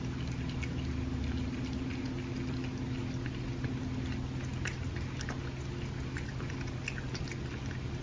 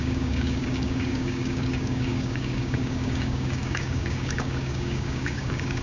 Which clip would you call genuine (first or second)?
first